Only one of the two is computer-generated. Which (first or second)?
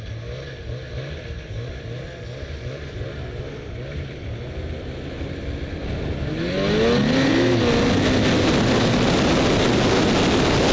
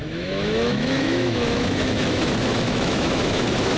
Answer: second